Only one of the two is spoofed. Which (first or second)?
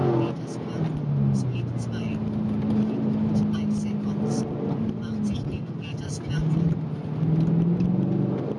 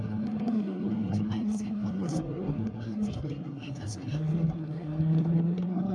second